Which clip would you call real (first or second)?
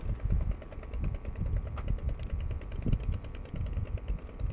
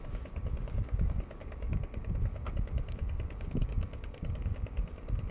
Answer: first